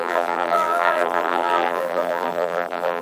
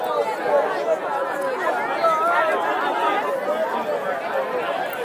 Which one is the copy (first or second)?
first